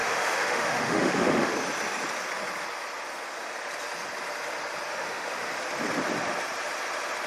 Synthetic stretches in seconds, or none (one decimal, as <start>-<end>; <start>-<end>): 0.0-1.5; 4.9-5.5